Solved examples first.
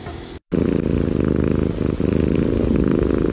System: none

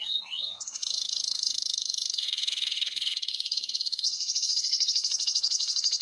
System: codec, SNAC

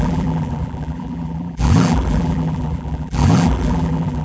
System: vocoder, BigVGAN v2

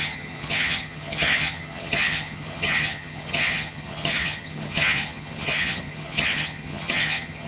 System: vocoder, HiFi-GAN